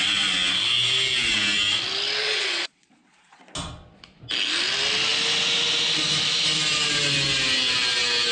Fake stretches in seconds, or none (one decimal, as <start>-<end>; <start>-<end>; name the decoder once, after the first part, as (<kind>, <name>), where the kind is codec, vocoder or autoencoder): 2.2-3.5 (vocoder, Vocos)